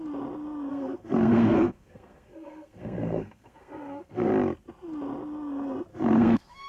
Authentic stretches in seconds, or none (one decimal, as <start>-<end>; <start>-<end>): 0.0-0.7; 4.3-5.9